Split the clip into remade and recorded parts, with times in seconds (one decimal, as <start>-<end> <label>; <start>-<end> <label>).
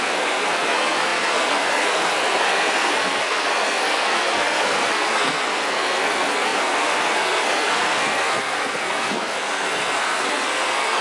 0.0-11.0 remade